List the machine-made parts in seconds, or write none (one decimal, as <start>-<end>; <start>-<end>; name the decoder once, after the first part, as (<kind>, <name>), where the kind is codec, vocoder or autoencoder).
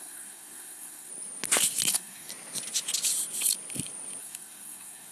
0.0-1.1 (codec, SNAC); 1.9-2.3; 4.2-5.1